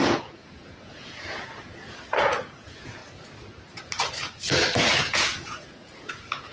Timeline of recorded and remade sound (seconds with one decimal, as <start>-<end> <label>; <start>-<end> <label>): 0.0-3.0 remade; 3.0-4.8 recorded; 4.8-6.5 remade